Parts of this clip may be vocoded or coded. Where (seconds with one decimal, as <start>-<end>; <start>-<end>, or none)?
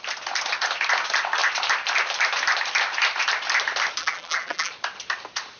4.0-4.7